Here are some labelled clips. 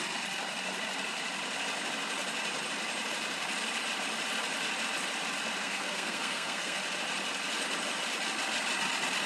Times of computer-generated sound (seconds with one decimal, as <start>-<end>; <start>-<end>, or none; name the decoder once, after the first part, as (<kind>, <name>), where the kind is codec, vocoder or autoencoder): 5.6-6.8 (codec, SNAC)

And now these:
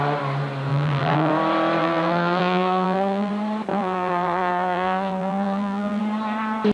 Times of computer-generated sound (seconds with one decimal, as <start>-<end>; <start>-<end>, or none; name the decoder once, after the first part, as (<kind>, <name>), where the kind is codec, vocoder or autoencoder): 0.7-1.3 (vocoder, BigVGAN v2); 1.8-3.3; 3.7-6.0

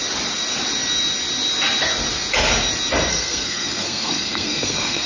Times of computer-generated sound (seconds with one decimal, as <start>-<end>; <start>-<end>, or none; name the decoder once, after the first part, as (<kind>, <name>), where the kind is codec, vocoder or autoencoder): 3.1-5.1 (codec, SNAC)

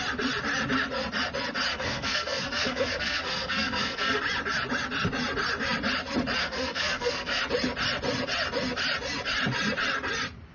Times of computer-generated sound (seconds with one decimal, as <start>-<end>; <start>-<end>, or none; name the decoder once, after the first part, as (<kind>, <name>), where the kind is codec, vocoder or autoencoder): 1.7-4.2 (codec, SNAC); 6.4-7.4

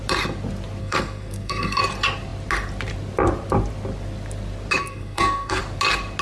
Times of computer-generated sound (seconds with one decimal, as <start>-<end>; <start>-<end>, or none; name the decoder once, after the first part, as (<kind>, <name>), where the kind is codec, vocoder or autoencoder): 0.8-1.8 (codec, SNAC); 4.8-5.6

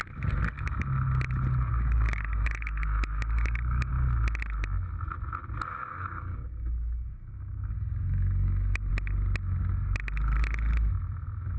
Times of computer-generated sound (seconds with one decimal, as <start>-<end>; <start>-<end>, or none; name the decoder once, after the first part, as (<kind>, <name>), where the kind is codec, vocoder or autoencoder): 1.7-3.9 (codec, DAC); 5.8-8.9